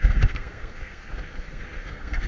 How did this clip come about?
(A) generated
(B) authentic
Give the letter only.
A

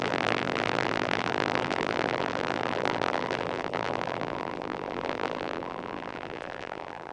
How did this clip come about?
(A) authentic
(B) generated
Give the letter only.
B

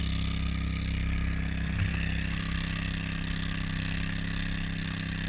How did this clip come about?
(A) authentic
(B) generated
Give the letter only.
A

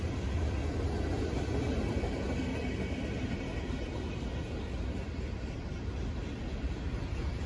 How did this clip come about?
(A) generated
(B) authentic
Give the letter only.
B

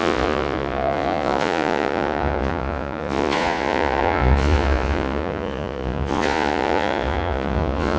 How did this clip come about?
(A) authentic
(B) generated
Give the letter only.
B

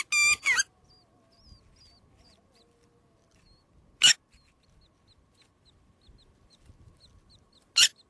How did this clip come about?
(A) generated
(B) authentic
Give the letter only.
B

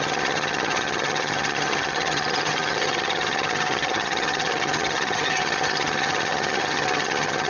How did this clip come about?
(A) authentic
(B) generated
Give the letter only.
B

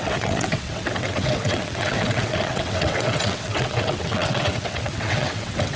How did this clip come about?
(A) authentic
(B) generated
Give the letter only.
B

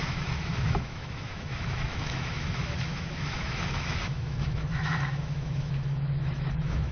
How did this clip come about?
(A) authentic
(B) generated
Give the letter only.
B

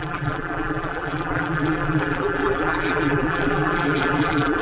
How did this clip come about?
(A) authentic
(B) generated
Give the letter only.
B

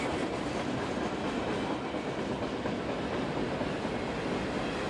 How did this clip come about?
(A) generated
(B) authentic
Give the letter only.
B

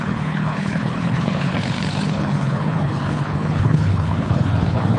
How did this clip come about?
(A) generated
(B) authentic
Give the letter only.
A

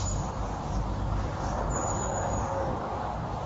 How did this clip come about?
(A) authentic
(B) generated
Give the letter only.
A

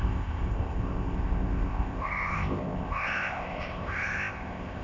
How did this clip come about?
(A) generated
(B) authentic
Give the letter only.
A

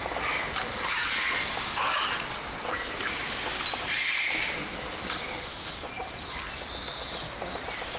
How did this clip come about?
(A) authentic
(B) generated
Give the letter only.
A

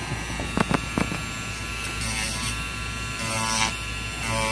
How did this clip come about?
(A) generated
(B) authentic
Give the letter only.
A